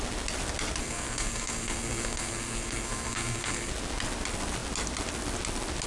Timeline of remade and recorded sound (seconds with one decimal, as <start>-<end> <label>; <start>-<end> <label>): 0.0-0.8 recorded; 0.8-3.7 remade; 3.7-5.9 recorded